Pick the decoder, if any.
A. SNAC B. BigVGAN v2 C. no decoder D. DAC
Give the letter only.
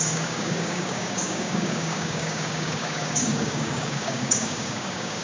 D